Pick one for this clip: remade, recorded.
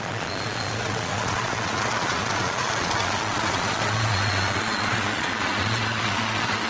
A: remade